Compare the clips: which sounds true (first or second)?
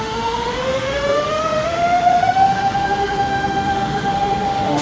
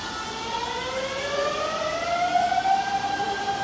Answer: second